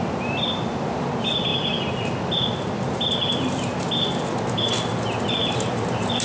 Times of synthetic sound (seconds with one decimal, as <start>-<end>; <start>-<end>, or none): 5.4-6.2